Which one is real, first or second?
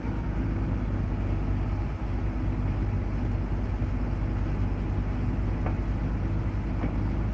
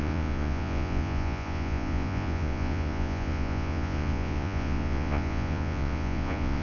first